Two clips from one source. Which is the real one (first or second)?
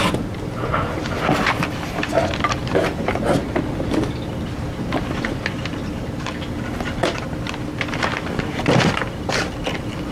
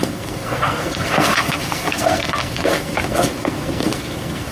first